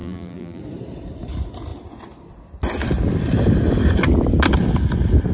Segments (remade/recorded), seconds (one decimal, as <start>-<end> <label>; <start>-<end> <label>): 0.0-0.6 remade; 0.6-5.3 recorded